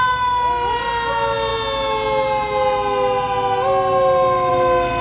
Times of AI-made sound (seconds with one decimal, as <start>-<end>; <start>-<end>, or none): none